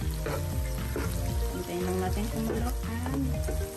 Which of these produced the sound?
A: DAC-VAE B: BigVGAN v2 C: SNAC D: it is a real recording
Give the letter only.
D